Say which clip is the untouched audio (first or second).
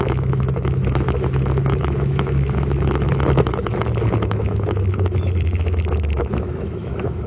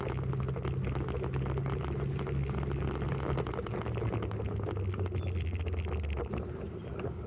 second